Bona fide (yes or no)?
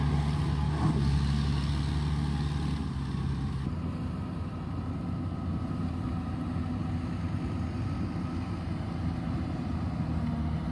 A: yes